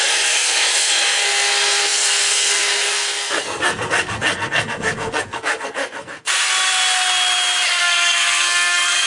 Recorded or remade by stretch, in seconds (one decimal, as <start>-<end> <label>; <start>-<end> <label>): 0.0-6.3 remade; 6.3-7.8 recorded; 7.8-9.1 remade